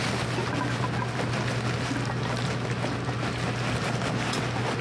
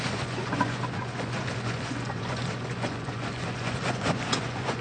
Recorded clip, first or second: first